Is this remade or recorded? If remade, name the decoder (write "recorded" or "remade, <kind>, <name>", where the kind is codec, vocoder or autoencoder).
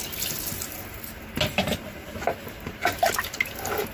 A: recorded